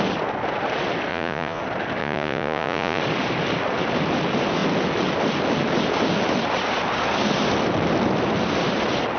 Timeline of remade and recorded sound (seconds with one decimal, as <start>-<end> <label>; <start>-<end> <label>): 0.0-1.1 recorded; 1.1-1.6 remade; 1.6-2.0 recorded; 2.0-3.0 remade; 3.0-9.2 recorded